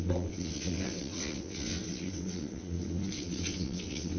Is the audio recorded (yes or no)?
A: no